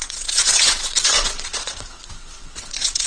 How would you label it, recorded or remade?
remade